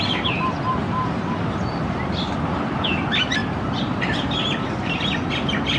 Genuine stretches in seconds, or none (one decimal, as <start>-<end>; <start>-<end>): 0.0-0.7; 2.0-3.4; 4.4-5.8